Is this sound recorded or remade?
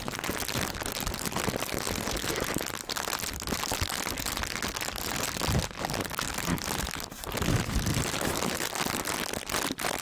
recorded